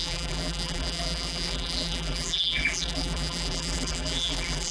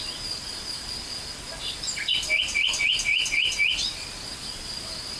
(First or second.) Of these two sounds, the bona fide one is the second